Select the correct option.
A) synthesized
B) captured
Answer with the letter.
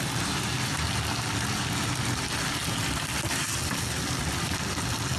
B